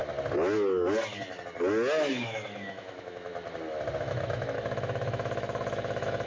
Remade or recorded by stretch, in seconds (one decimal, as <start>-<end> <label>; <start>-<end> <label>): 0.0-2.1 recorded; 2.1-3.3 remade; 3.3-4.0 recorded; 4.0-6.3 remade